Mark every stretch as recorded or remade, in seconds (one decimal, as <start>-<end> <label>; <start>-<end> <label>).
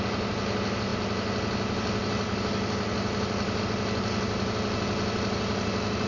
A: 0.0-6.1 recorded